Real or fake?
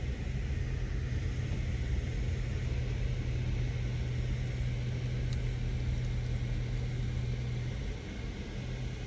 real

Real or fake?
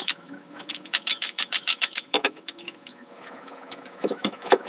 fake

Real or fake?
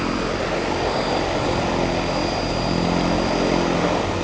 real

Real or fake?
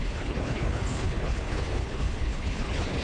fake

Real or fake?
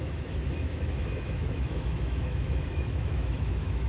fake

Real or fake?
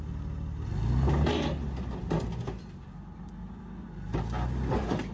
real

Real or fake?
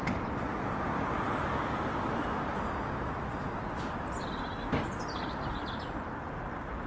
real